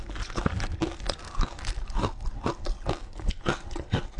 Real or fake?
real